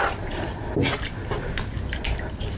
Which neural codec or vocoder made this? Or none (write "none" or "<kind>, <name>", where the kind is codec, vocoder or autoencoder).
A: none